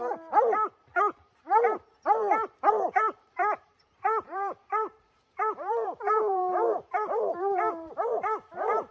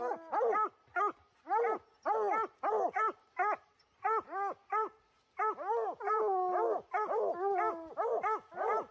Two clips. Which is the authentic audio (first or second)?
second